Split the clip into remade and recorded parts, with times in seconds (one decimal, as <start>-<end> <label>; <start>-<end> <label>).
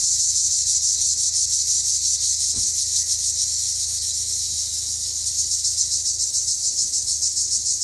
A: 0.0-0.5 recorded; 0.5-7.8 remade